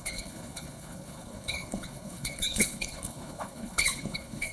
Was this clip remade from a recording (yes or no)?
yes